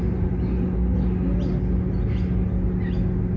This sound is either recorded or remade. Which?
recorded